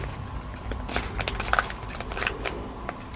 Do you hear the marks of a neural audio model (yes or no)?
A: no